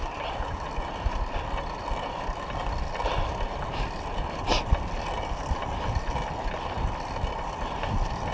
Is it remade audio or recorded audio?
recorded